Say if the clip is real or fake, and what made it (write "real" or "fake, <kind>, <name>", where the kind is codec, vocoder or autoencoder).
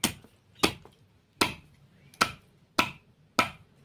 real